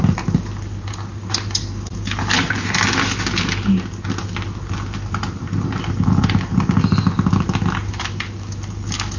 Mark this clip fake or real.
real